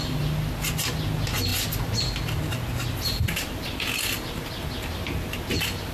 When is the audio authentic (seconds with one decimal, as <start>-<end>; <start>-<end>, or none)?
0.0-5.9